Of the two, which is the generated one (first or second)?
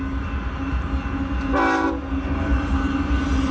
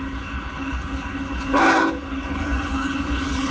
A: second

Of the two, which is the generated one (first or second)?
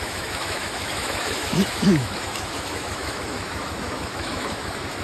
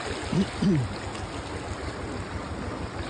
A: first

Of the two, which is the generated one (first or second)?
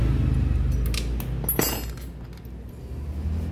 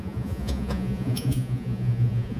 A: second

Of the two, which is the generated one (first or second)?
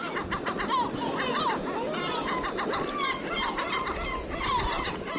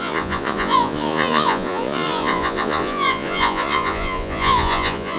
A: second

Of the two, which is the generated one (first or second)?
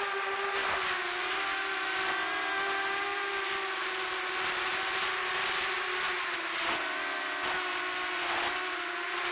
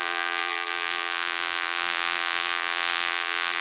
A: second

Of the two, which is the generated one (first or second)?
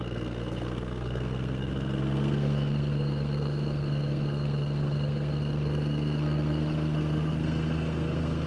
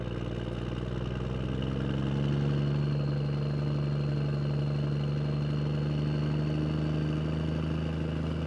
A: first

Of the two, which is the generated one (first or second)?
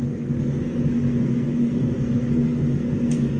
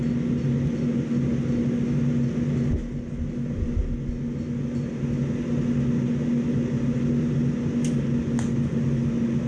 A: first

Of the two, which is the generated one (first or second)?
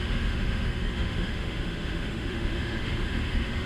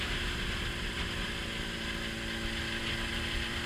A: first